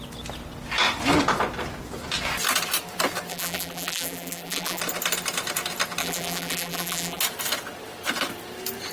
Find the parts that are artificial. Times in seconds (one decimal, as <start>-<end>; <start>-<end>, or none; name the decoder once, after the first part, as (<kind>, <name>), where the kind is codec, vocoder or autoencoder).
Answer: 3.3-4.8 (vocoder, BigVGAN v2); 6.0-7.2